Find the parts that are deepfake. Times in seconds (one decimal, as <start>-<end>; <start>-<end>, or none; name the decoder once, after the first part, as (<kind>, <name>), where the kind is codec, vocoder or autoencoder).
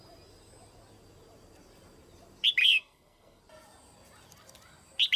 2.6-3.4 (codec, SNAC)